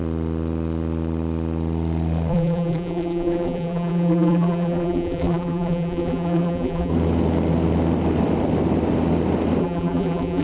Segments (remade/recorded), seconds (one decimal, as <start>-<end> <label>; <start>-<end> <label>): 0.0-2.3 recorded; 2.3-6.9 remade; 6.9-9.6 recorded; 9.6-10.4 remade